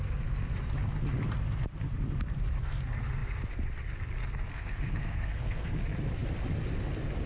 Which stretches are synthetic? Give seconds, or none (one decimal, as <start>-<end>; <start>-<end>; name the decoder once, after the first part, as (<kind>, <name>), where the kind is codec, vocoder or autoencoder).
4.5-5.7 (codec, SNAC)